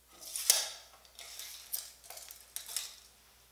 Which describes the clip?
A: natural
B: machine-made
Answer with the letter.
A